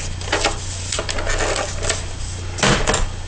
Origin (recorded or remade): recorded